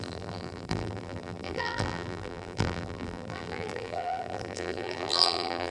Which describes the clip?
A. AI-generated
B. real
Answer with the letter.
A